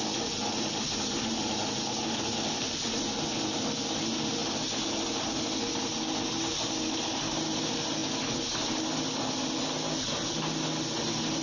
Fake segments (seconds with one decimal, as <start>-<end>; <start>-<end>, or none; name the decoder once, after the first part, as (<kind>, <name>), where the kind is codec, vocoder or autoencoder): none